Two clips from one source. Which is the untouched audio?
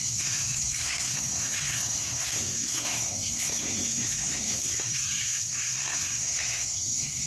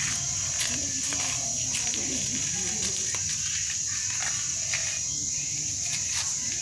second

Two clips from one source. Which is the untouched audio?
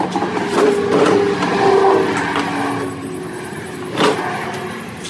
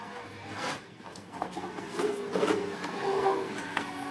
first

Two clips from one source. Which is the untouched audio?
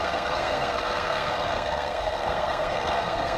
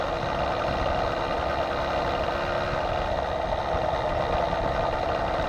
second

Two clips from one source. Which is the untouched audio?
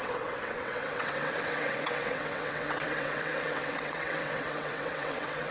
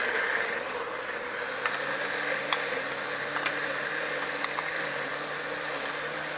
second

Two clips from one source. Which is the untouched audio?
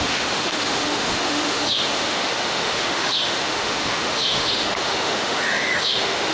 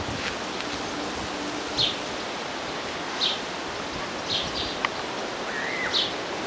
second